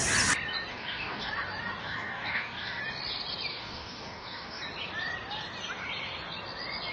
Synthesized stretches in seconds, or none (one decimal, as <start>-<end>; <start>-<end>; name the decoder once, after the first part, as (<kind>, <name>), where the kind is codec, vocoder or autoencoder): 0.7-1.3 (codec, DAC); 1.8-2.8; 3.5-4.6

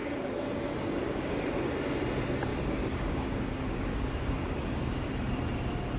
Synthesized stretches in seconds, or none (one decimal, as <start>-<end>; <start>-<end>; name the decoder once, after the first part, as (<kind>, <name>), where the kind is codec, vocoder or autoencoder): 0.0-1.4 (codec, DAC); 2.5-5.1

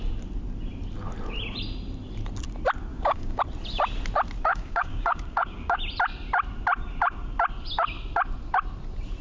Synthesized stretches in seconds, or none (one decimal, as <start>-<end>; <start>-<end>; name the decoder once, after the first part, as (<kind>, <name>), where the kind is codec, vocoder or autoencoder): 2.9-3.4 (codec, DAC); 4.5-5.8

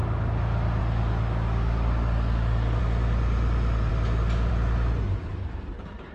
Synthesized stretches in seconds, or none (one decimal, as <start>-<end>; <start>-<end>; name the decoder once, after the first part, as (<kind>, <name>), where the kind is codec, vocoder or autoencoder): 0.8-2.8 (codec, DAC)

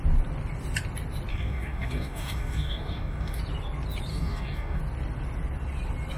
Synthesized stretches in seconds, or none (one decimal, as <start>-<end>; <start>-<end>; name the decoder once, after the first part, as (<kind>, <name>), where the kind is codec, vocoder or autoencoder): 1.3-3.4 (codec, DAC); 4.1-4.8

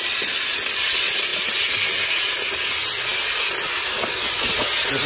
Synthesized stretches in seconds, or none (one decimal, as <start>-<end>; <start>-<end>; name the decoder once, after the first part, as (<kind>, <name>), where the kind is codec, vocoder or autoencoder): none

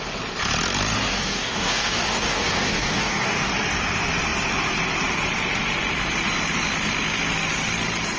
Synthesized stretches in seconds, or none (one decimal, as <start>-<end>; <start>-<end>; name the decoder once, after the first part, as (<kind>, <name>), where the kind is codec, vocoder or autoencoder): 1.1-3.5 (codec, DAC)